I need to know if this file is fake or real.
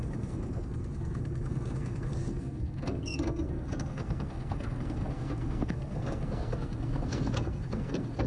fake